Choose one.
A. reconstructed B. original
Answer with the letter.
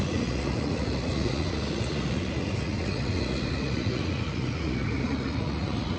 A